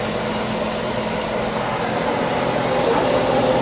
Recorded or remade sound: recorded